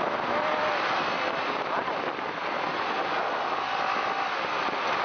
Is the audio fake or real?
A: real